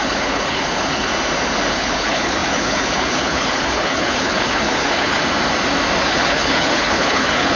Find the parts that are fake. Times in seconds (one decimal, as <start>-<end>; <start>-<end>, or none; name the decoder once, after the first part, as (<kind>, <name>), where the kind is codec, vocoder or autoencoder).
0.0-1.1 (codec, HILCodec); 1.7-5.2; 6.0-7.6